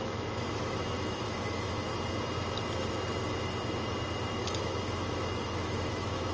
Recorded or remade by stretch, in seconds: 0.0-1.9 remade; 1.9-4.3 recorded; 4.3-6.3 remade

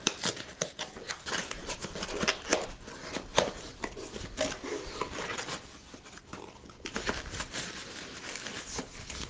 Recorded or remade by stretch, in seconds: 0.0-7.8 recorded; 7.8-8.3 remade; 8.3-9.3 recorded

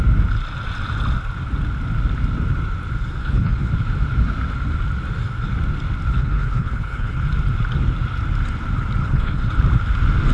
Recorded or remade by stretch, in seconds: 0.0-3.2 recorded; 3.2-3.7 remade; 3.7-6.1 recorded; 6.1-7.2 remade; 7.2-9.0 recorded; 9.0-9.5 remade; 9.5-10.3 recorded